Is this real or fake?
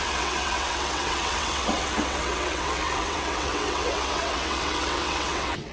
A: fake